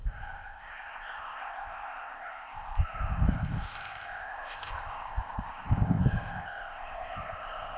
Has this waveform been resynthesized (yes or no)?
yes